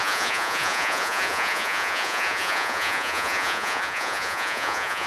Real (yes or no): no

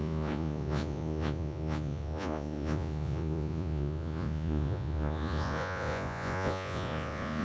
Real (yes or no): no